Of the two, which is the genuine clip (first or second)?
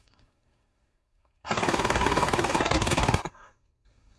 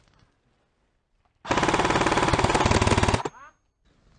second